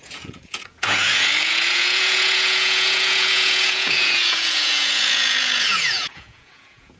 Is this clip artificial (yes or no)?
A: yes